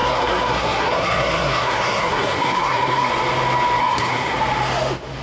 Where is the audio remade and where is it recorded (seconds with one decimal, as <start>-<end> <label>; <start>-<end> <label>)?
0.0-3.1 remade; 3.1-3.8 recorded; 3.8-4.4 remade; 4.4-5.2 recorded